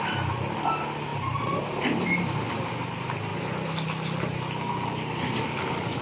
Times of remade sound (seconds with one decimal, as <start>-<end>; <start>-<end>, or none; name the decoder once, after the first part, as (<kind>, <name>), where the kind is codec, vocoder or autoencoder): none